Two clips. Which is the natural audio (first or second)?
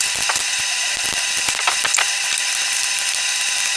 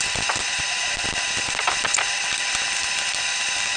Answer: second